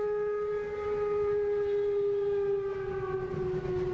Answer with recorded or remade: recorded